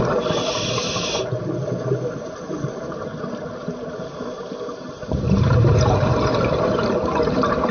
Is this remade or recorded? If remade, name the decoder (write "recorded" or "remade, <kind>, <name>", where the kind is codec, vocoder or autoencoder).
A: remade, vocoder, BigVGAN v2